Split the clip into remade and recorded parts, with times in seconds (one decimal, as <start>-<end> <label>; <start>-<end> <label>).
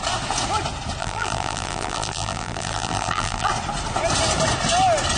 0.0-1.0 recorded; 1.0-3.5 remade; 3.5-5.2 recorded